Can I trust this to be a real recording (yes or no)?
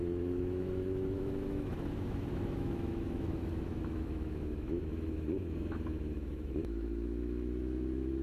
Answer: no